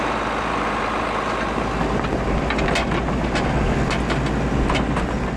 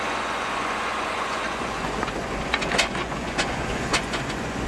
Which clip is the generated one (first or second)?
second